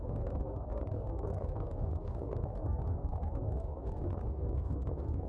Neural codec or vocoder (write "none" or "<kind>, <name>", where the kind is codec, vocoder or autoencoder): codec, DAC